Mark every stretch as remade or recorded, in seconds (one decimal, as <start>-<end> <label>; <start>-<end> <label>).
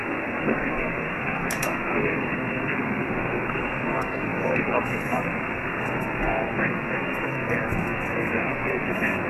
0.0-9.3 remade